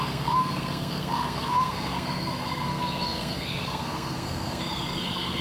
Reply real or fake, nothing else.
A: fake